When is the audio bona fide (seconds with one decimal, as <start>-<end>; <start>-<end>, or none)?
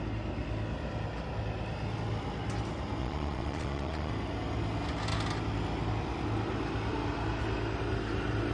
0.0-3.0; 4.1-8.5